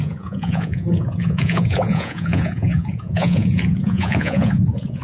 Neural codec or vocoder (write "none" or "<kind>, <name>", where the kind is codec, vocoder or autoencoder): vocoder, Vocos